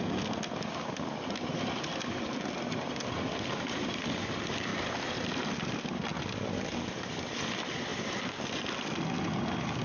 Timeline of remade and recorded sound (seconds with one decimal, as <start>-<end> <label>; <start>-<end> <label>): 0.0-9.8 recorded